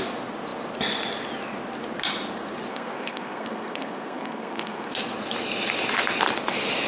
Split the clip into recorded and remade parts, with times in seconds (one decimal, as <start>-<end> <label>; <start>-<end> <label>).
0.0-2.7 recorded; 2.7-4.9 remade; 4.9-6.9 recorded